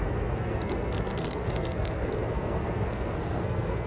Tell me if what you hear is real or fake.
fake